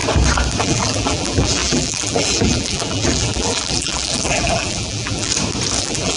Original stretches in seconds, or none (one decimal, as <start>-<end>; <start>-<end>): 0.0-0.6; 5.3-5.8